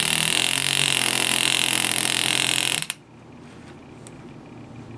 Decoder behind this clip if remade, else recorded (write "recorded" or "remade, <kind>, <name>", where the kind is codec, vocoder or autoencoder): recorded